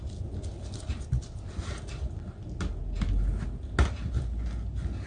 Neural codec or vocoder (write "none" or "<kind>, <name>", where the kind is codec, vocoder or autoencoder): none